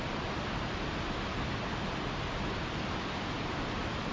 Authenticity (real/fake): real